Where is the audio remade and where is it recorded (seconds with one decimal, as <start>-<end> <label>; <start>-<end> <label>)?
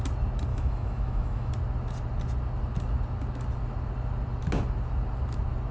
0.0-0.5 recorded; 0.5-1.5 remade; 1.5-5.7 recorded